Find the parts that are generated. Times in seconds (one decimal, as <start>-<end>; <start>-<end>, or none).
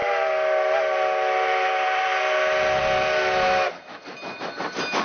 none